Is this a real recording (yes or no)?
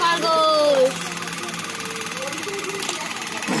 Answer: yes